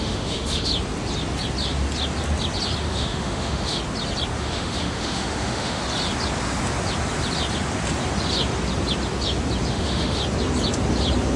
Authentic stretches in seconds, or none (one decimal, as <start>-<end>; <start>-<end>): 0.7-2.8; 3.8-4.4; 5.8-9.7; 10.2-11.4